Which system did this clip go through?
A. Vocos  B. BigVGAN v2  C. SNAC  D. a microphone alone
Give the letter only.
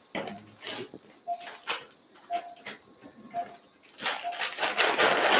D